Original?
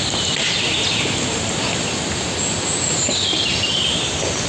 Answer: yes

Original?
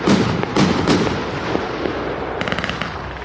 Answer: yes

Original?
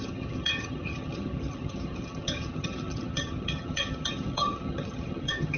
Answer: no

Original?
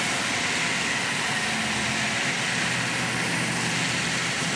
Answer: yes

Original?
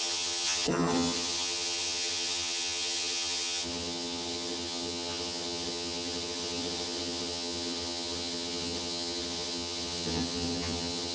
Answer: no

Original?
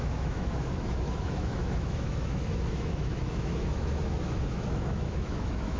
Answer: no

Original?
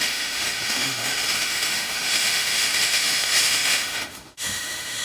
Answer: no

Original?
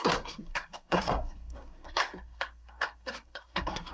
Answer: no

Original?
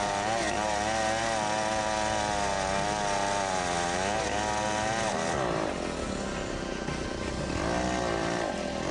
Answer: yes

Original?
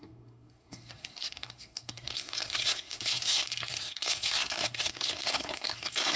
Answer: no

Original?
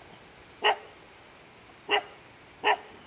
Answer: yes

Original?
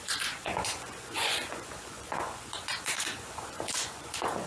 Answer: no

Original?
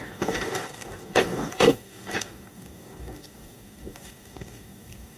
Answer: no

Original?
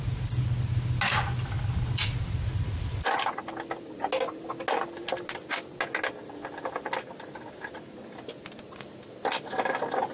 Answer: yes